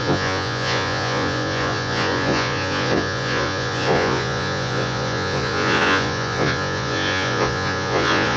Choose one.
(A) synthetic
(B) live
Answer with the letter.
A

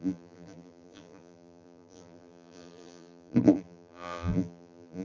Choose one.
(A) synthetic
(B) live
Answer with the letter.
A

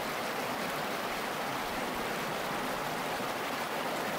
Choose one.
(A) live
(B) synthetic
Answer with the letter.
A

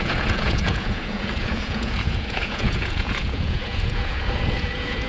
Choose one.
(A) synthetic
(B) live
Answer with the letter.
A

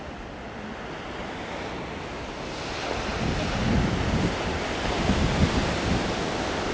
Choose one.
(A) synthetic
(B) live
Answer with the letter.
B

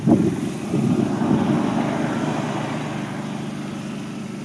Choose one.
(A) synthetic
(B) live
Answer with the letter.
B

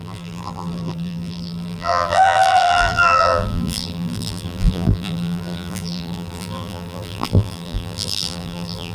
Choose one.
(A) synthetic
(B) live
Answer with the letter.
A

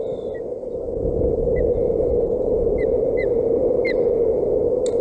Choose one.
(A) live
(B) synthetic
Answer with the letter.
A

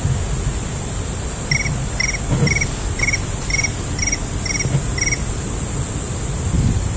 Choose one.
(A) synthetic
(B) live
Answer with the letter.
B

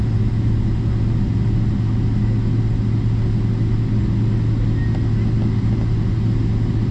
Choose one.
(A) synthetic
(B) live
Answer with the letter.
B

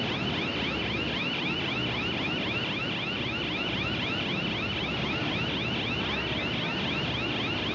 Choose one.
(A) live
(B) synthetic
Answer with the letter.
A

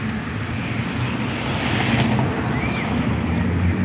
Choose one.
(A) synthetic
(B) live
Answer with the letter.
B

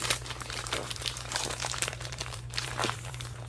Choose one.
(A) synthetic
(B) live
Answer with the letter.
A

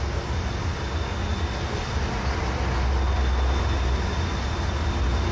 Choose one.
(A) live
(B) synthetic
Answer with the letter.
A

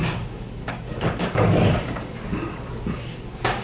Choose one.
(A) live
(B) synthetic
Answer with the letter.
B